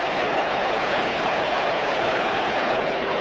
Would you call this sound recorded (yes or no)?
no